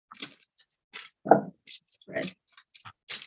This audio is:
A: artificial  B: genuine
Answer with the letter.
B